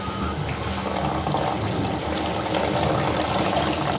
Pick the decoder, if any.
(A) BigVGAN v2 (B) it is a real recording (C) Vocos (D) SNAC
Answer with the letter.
A